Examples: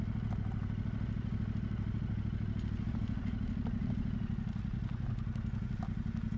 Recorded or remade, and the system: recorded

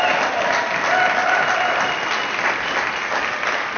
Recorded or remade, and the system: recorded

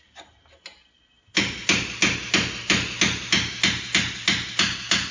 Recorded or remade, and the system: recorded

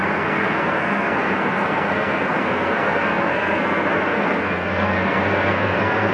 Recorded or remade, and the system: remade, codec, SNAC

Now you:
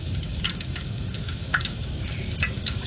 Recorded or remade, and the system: remade, codec, DAC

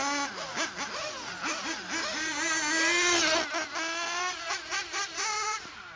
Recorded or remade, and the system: recorded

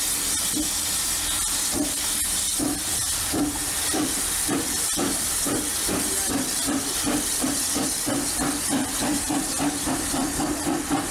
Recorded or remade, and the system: remade, vocoder, BigVGAN v2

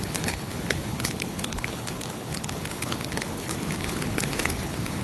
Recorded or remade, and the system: remade, codec, HILCodec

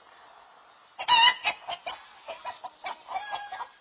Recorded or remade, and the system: recorded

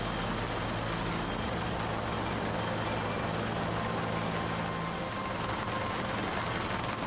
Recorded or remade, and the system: recorded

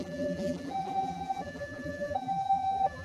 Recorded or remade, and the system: remade, vocoder, BigVGAN v2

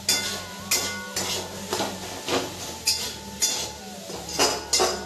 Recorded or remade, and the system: recorded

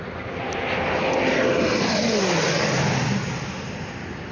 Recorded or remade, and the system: recorded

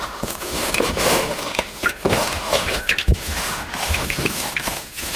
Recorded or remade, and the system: remade, autoencoder, DAC-VAE